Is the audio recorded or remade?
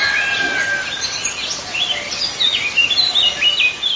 recorded